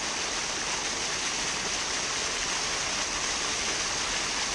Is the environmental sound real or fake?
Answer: real